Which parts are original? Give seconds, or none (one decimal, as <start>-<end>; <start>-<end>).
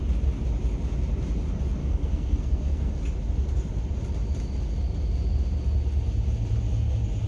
0.0-1.8; 2.9-7.3